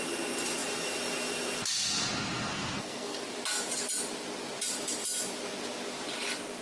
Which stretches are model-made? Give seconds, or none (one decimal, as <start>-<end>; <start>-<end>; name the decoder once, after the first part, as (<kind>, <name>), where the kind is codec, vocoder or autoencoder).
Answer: 2.5-3.2 (codec, SNAC)